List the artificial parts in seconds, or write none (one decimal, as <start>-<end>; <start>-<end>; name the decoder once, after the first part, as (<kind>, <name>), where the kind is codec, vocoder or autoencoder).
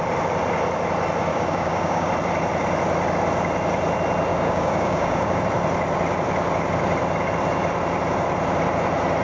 1.3-2.1 (codec, DAC); 4.3-5.4